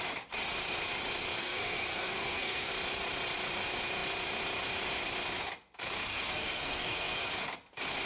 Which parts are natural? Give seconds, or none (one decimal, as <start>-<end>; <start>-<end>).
0.0-1.4; 2.7-6.1; 7.3-8.1